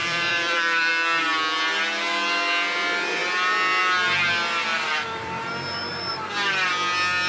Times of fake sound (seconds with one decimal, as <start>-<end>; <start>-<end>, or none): 0.0-0.9; 4.7-5.4

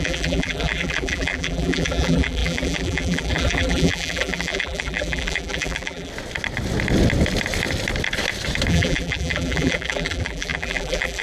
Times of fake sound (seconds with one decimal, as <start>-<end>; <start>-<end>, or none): 0.0-6.1; 8.7-11.2

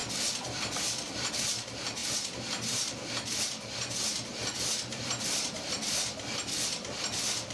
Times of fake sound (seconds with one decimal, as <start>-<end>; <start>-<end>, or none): none

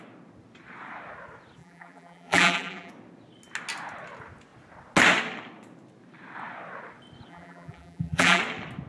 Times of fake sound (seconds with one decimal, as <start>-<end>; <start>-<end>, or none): 1.6-2.9; 7.3-8.4

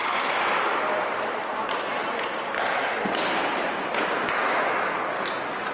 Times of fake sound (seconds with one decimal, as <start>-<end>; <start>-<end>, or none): 0.0-3.4

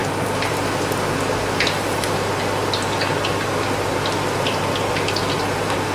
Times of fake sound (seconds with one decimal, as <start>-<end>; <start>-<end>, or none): 0.0-0.7